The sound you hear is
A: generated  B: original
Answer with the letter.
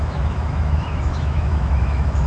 A